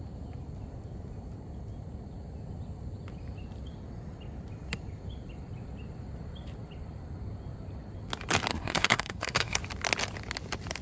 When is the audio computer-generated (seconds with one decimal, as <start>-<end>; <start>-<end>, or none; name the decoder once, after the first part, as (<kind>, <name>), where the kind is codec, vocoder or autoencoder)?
8.5-9.6 (codec, SNAC)